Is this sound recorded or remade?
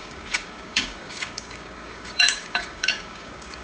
remade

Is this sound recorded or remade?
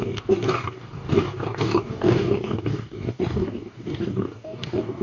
remade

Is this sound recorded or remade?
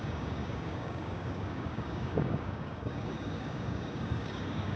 remade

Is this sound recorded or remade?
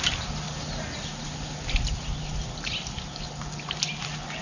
recorded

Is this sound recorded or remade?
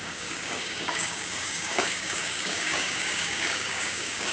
remade